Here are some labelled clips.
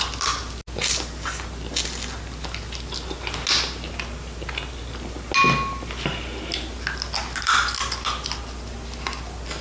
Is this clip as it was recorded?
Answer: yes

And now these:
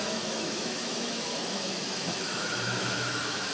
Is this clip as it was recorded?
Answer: no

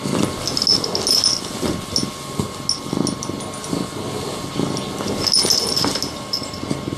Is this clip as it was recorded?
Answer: yes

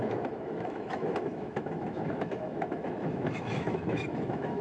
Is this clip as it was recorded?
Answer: no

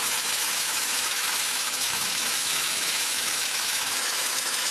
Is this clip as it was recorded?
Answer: no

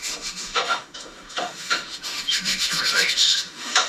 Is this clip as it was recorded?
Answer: no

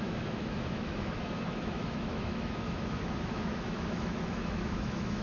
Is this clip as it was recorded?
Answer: no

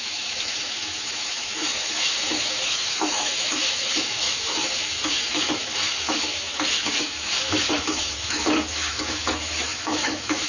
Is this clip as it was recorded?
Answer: no